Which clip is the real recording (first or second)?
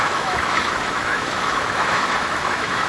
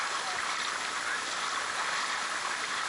second